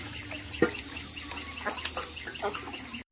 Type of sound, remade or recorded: recorded